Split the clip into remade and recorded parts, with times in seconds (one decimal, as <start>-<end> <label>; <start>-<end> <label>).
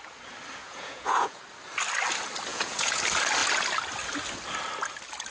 0.0-0.6 recorded; 0.6-1.4 remade; 1.4-2.5 recorded; 2.5-3.0 remade; 3.0-5.3 recorded